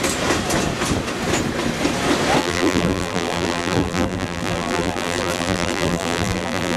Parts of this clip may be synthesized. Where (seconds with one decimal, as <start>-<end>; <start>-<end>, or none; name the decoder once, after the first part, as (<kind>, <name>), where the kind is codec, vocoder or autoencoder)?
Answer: 2.4-6.8 (vocoder, BigVGAN v2)